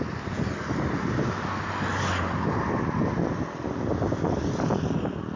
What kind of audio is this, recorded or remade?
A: recorded